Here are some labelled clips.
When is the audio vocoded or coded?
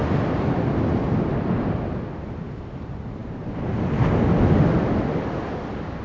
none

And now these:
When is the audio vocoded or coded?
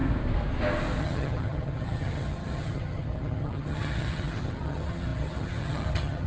1.0-6.3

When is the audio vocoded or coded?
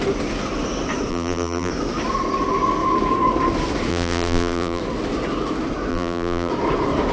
1.1-1.7; 3.9-4.8; 5.9-6.5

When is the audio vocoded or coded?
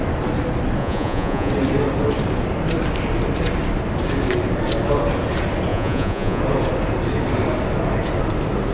0.8-1.5; 5.7-6.4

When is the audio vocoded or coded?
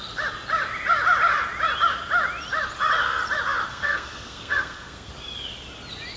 3.7-5.1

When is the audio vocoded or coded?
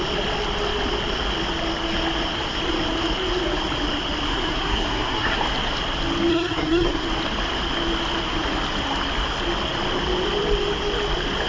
4.3-5.4; 6.3-7.1